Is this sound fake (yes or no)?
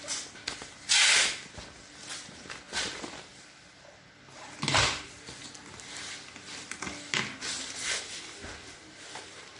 no